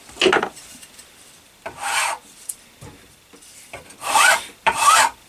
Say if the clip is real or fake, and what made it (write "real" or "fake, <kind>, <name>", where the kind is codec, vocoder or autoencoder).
fake, vocoder, BigVGAN v2